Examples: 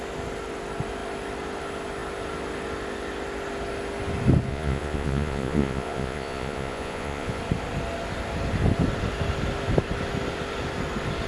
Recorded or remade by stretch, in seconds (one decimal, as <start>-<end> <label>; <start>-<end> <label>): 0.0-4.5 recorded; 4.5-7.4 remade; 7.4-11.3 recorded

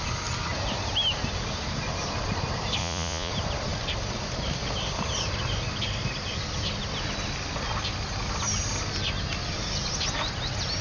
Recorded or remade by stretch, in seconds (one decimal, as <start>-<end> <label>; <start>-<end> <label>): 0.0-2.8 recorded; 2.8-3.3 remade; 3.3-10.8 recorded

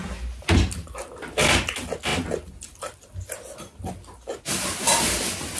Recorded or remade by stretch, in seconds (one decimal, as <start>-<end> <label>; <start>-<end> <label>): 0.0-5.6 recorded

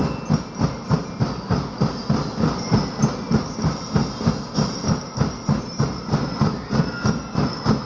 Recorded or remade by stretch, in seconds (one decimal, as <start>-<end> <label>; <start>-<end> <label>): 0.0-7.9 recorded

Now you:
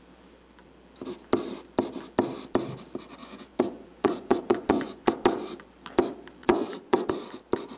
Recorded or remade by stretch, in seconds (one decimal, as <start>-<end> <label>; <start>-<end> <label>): 0.0-3.2 recorded; 3.2-5.1 remade; 5.1-6.4 recorded; 6.4-7.1 remade; 7.1-7.8 recorded

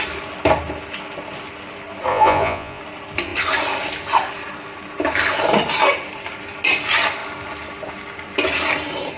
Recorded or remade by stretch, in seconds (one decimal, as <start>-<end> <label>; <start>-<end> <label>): 0.0-2.1 recorded; 2.1-2.8 remade; 2.8-9.2 recorded